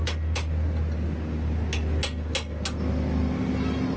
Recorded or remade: recorded